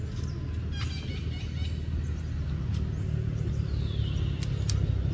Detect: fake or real real